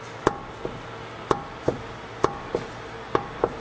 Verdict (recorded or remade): recorded